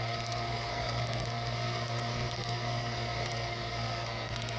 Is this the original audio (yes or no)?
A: no